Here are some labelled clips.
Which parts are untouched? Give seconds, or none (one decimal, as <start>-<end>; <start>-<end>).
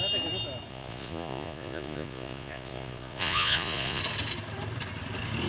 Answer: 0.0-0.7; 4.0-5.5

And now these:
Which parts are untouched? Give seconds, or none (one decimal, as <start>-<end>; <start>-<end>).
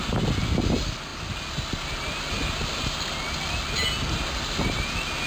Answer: 0.0-5.3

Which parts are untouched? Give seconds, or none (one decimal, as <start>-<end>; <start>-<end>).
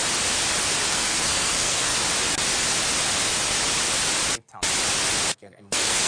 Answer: 0.0-0.9; 1.9-5.3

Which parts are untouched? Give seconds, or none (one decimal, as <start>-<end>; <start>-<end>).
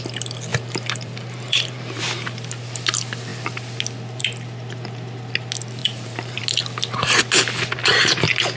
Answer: 0.0-0.5; 2.0-5.8; 6.4-8.6